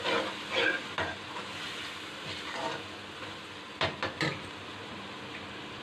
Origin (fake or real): real